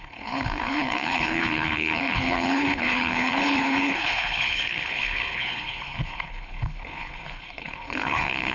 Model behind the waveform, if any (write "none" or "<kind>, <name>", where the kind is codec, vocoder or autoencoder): codec, HILCodec